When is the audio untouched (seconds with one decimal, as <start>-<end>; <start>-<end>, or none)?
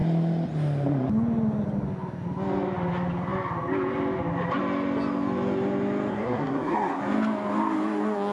0.0-6.1; 7.0-8.3